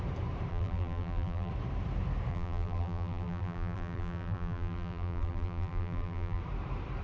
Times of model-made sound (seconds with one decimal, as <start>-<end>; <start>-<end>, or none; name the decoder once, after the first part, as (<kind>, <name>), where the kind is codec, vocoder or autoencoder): 0.5-1.5 (vocoder, BigVGAN v2); 2.3-6.4